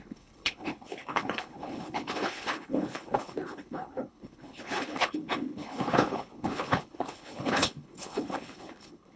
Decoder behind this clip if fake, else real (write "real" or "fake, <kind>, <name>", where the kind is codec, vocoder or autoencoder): fake, codec, HILCodec